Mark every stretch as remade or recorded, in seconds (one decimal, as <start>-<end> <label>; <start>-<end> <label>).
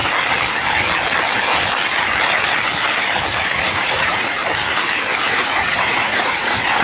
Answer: 0.0-3.4 recorded; 3.4-4.4 remade; 4.4-5.3 recorded; 5.3-6.8 remade